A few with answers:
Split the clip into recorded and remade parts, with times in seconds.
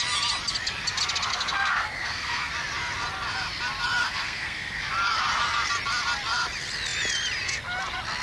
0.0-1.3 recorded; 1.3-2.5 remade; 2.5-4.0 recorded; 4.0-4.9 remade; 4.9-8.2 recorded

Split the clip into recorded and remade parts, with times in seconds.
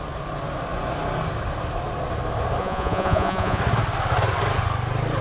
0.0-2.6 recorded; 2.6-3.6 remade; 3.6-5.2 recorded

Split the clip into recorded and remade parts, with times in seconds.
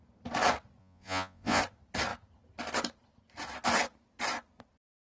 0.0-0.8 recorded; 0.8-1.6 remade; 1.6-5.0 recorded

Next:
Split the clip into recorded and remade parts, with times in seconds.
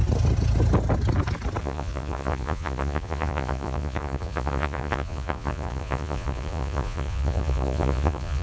0.0-1.6 recorded; 1.6-8.4 remade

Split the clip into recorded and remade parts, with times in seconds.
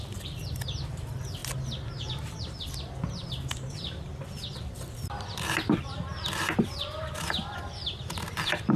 0.0-1.4 remade; 1.4-2.0 recorded; 2.0-8.8 remade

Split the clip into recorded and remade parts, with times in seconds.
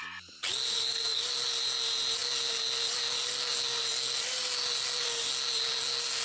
0.0-0.7 recorded; 0.7-1.2 remade; 1.2-6.2 recorded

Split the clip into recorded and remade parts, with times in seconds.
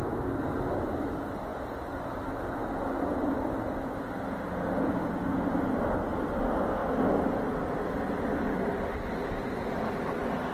0.0-10.5 recorded